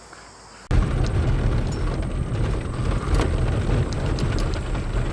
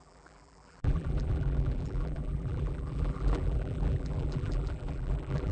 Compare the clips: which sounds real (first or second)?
first